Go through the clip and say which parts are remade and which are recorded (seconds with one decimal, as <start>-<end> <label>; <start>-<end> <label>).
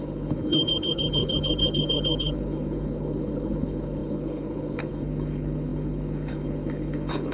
0.0-7.3 remade